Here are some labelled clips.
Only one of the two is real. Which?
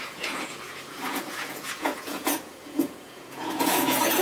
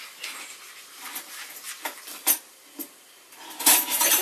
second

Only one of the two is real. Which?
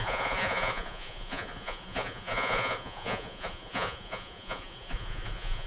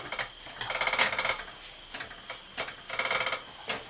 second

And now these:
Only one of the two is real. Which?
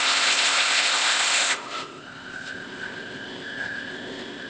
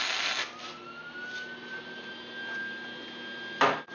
second